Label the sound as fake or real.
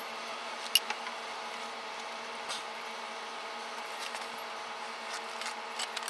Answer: real